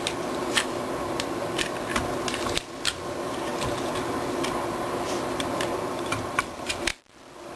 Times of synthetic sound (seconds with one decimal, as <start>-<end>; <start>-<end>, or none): 0.0-3.5; 4.1-6.9